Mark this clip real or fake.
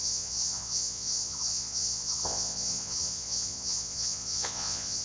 fake